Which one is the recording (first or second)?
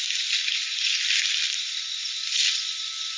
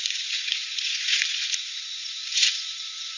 first